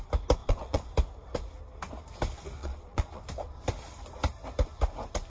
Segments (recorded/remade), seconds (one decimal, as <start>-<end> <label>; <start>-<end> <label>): 0.0-0.4 recorded; 0.4-0.9 remade; 0.9-2.6 recorded; 2.6-3.2 remade; 3.2-5.3 recorded